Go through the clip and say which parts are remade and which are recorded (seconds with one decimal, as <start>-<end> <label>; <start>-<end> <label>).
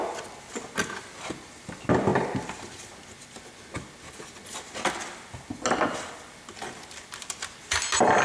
0.0-8.2 recorded